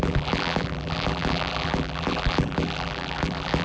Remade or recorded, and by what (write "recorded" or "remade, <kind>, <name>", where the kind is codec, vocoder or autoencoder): remade, vocoder, BigVGAN v2